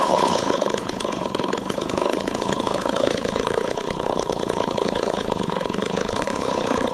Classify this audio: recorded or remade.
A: remade